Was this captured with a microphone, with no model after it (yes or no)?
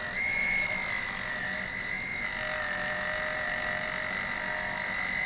yes